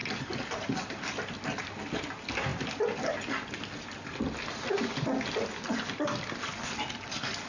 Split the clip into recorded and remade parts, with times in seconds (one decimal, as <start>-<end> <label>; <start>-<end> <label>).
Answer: 0.0-7.5 recorded